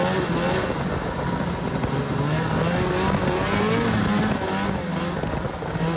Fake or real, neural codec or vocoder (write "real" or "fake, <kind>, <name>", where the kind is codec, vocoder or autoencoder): real